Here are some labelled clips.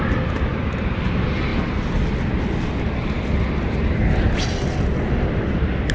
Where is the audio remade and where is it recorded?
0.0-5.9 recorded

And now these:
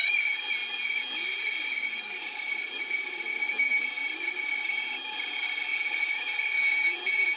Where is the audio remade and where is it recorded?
0.0-7.4 recorded

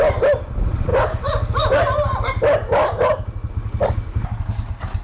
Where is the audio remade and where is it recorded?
0.0-5.0 recorded

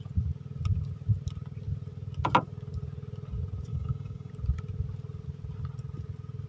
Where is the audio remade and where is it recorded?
0.0-3.7 recorded; 3.7-4.3 remade; 4.3-6.5 recorded

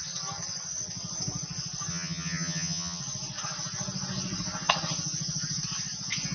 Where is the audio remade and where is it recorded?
0.0-1.9 recorded; 1.9-3.0 remade; 3.0-6.3 recorded

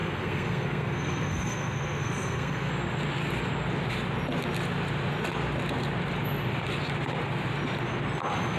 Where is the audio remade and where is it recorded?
0.0-2.7 remade; 2.7-8.6 recorded

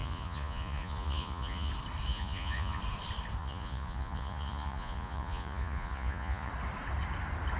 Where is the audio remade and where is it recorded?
0.0-1.7 remade; 1.7-2.1 recorded; 2.1-2.8 remade; 2.8-3.4 recorded; 3.4-6.5 remade; 6.5-7.6 recorded